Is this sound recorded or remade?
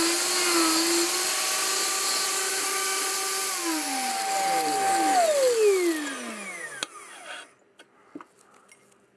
recorded